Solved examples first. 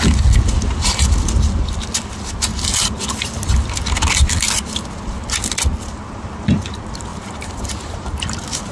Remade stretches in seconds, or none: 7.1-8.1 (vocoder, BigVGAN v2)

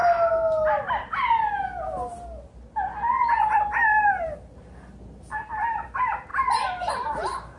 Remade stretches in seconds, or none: 4.2-6.3 (vocoder, BigVGAN v2); 6.9-7.6

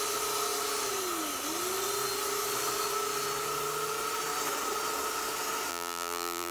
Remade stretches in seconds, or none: 5.7-6.5 (vocoder, BigVGAN v2)

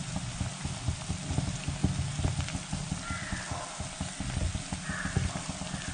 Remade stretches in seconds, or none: none

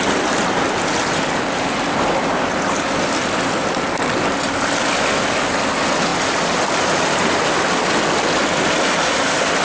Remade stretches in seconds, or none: 2.2-2.9 (vocoder, BigVGAN v2)

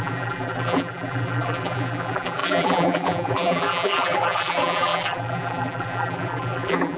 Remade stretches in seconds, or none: 0.0-7.0 (vocoder, BigVGAN v2)

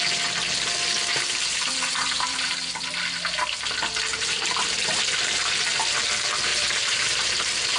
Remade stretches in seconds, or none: 1.1-2.7 (vocoder, BigVGAN v2); 4.1-4.7; 6.5-7.8

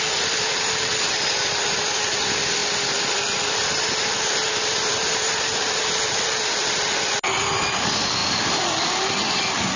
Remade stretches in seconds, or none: none